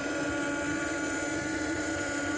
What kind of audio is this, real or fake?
fake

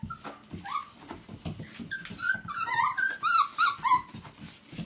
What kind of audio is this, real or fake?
real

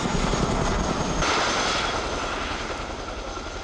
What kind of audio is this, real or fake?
real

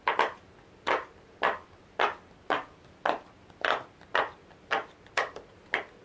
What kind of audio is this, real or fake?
real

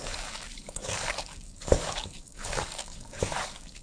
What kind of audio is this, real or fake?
fake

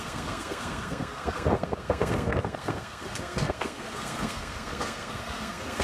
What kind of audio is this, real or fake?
fake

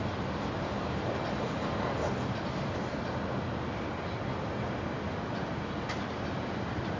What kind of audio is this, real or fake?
real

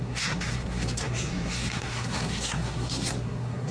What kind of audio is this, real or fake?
fake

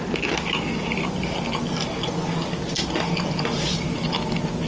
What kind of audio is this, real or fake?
real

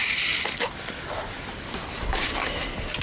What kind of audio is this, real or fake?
fake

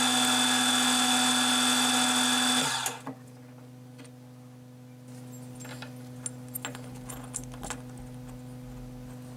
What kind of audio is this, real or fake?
real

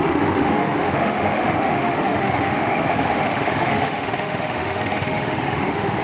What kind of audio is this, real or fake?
fake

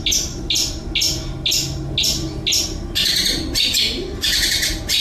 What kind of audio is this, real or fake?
real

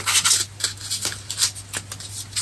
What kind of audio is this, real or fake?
real